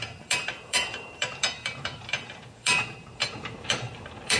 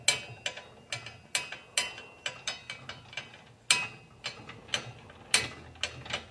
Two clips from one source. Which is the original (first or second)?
second